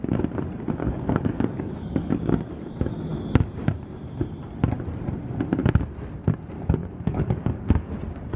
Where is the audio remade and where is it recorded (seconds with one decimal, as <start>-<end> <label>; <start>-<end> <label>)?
0.0-0.8 recorded; 0.8-2.7 remade; 2.7-6.8 recorded; 6.8-7.9 remade; 7.9-8.4 recorded